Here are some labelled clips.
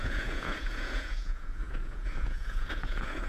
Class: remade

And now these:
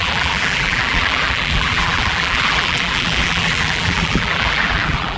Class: remade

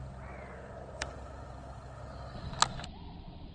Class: recorded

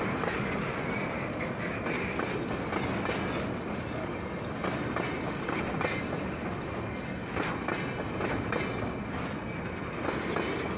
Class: recorded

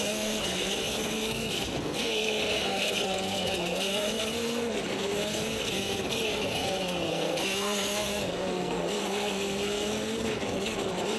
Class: remade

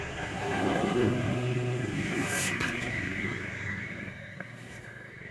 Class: remade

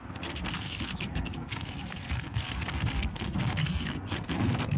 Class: remade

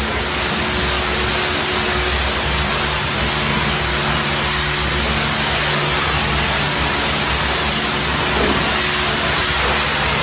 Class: recorded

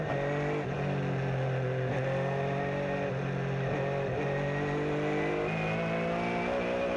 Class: recorded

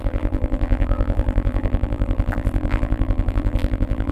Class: remade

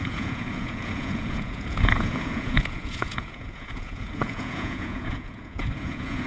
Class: remade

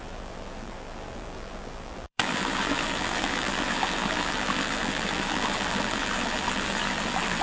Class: remade